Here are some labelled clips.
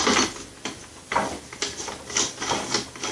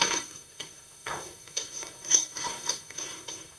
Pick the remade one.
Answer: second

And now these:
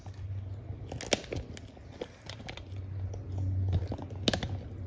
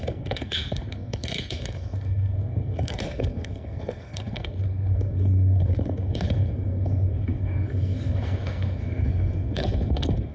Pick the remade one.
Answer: second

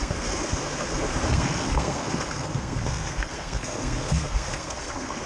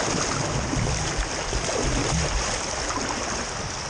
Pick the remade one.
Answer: first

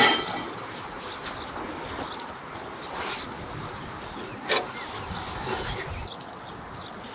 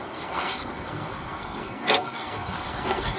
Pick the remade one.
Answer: second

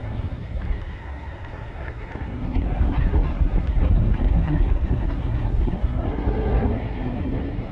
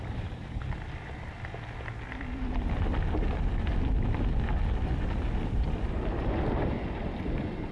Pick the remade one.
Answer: first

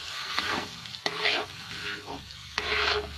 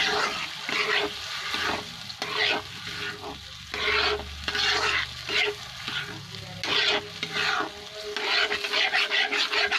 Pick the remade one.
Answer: first